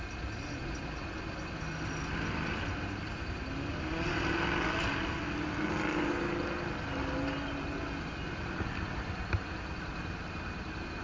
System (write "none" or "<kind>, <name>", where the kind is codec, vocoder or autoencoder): none